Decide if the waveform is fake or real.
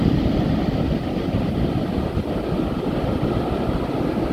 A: fake